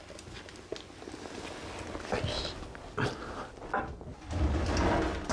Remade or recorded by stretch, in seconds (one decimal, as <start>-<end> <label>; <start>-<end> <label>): 0.0-5.3 recorded

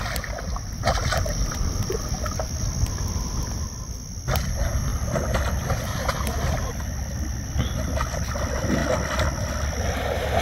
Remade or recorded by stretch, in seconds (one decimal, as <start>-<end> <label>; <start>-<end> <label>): 0.0-10.4 recorded

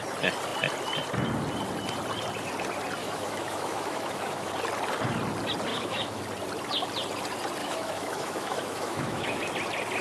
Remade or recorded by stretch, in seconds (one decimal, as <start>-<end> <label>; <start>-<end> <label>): 0.0-3.0 recorded; 3.0-4.5 remade; 4.5-5.7 recorded; 5.7-6.2 remade; 6.2-7.6 recorded; 7.6-9.4 remade; 9.4-10.0 recorded

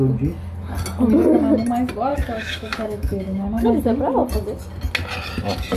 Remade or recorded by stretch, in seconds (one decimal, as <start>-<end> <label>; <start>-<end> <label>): 0.0-2.1 recorded; 2.1-3.8 remade; 3.8-5.8 recorded

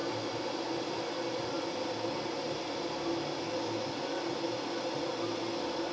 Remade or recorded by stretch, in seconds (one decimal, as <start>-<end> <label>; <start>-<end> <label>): 0.0-5.9 recorded

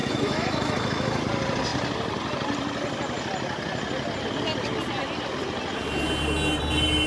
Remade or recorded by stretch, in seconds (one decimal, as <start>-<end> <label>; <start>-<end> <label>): 0.0-1.2 remade; 1.2-7.1 recorded

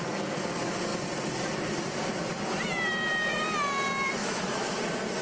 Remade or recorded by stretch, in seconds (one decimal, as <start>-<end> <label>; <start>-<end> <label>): 0.0-4.2 recorded; 4.2-4.8 remade; 4.8-5.2 recorded

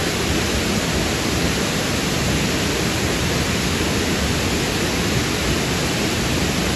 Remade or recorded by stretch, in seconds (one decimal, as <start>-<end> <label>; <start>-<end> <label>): 0.0-6.8 recorded